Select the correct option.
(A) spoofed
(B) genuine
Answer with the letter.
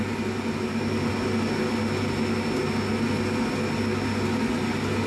B